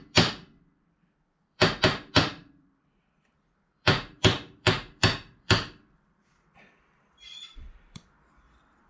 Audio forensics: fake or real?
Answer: fake